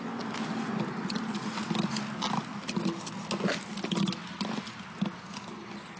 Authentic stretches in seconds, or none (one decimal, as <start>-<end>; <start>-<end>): 0.0-6.0